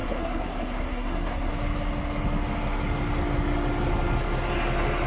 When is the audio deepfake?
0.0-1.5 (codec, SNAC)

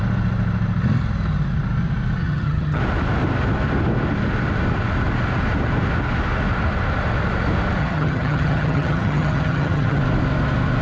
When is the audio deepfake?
2.2-2.8 (vocoder, HiFi-GAN); 7.8-10.0

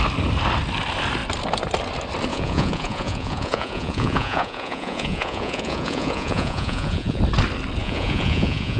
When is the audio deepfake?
2.3-7.2 (vocoder, Vocos); 7.8-8.8

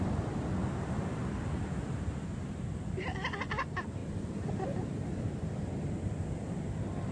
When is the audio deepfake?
none

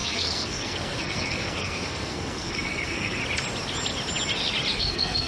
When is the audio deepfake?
0.0-3.2 (codec, SNAC); 4.7-5.3

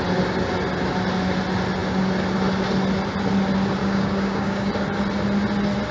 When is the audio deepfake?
3.8-4.7 (codec, DAC)

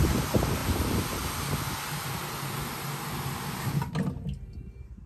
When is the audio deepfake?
none